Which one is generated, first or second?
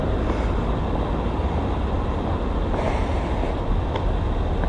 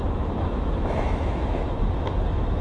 second